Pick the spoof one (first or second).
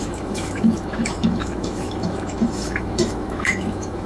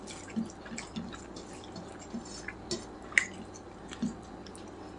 first